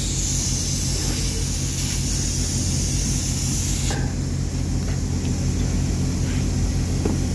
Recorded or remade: recorded